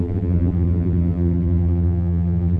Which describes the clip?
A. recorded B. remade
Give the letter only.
B